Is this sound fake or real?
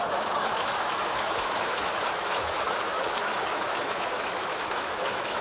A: fake